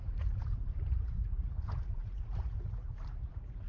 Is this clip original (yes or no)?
no